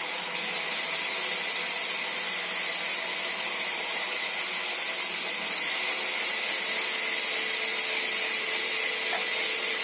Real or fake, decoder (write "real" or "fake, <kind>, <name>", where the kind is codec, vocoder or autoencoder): real